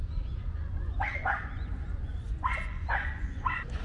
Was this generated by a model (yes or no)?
yes